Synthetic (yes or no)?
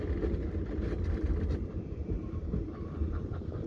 no